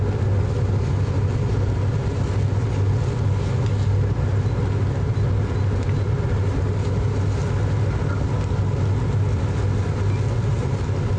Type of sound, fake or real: real